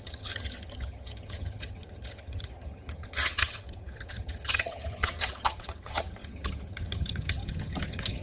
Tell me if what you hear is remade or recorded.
remade